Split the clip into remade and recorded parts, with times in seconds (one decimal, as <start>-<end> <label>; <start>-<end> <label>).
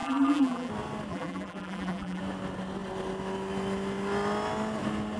0.0-0.7 remade; 0.7-1.1 recorded; 1.1-2.2 remade; 2.2-5.2 recorded